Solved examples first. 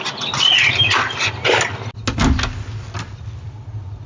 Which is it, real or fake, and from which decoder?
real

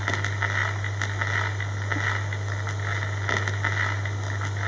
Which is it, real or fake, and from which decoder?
real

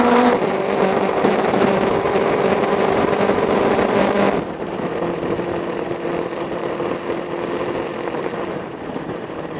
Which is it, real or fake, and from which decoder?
fake, vocoder, BigVGAN v2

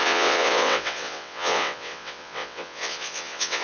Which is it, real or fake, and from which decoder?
fake, vocoder, WaveNeXt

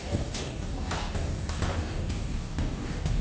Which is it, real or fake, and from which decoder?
fake, codec, DAC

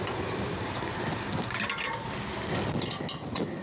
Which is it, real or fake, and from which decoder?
real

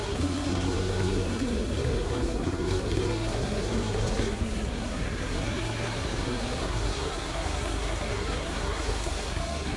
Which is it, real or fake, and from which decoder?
fake, codec, SNAC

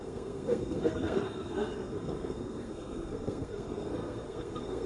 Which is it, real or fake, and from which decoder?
fake, codec, SNAC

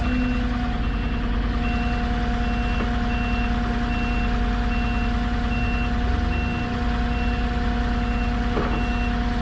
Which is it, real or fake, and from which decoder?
real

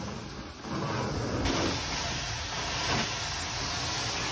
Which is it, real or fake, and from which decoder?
real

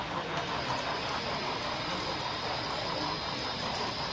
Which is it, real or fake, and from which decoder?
real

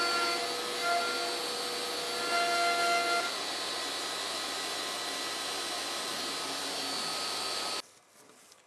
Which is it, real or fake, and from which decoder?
real